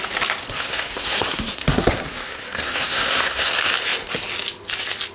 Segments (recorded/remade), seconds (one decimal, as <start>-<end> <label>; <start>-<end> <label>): 0.0-0.4 recorded; 0.4-3.5 remade; 3.5-5.1 recorded